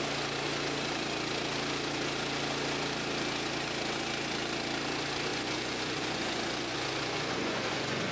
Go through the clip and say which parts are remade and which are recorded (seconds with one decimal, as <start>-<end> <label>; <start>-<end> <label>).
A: 0.0-5.3 recorded; 5.3-8.1 remade